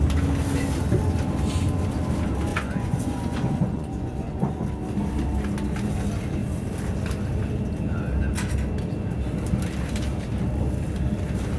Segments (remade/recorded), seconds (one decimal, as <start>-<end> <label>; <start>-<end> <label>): 0.0-2.5 recorded; 2.5-4.6 remade; 4.6-11.6 recorded